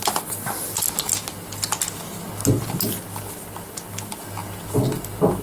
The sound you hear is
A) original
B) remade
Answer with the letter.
A